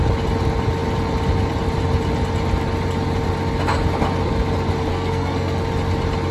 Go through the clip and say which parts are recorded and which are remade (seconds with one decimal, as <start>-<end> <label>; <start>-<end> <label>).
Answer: 0.0-4.9 recorded; 4.9-5.6 remade; 5.6-6.3 recorded